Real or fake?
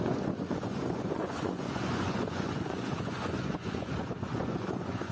fake